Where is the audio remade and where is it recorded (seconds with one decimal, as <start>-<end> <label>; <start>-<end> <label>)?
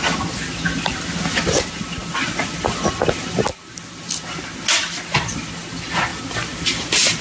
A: 0.0-6.1 recorded; 6.1-7.2 remade